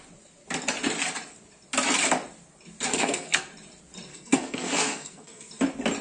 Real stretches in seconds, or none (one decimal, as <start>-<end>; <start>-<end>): 0.0-2.9; 3.5-4.1; 5.5-6.0